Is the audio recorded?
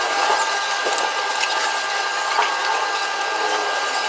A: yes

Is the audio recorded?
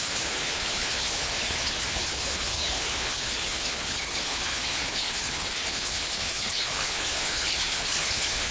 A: no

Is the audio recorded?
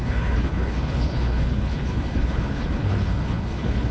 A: no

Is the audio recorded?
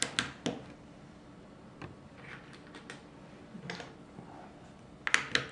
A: yes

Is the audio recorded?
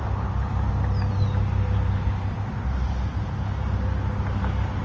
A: yes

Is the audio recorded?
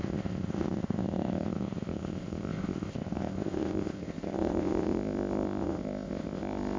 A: no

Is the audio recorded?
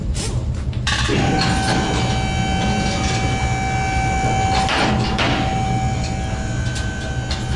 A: yes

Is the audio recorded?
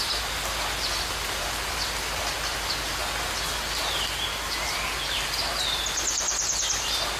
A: yes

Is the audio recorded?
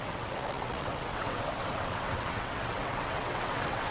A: no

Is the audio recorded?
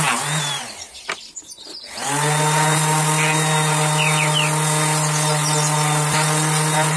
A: yes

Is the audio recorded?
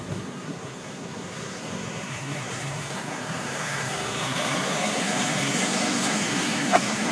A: no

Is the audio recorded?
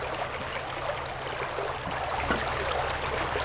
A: yes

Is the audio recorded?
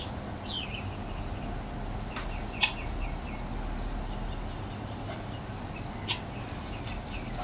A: yes